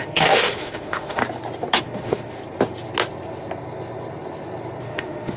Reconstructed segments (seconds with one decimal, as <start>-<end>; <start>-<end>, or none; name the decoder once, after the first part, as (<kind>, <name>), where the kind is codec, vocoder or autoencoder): 0.0-1.2 (autoencoder, DAC-VAE); 1.8-2.4; 4.8-5.4